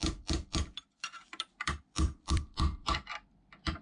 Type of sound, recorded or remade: remade